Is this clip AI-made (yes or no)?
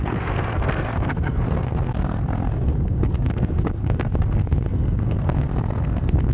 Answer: yes